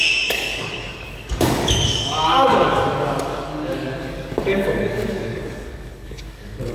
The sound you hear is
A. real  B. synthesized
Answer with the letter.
B